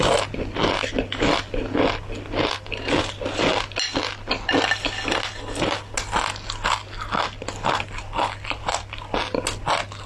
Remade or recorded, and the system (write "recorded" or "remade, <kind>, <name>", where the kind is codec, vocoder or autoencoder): recorded